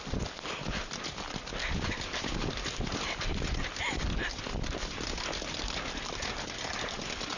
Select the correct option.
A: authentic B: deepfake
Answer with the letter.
A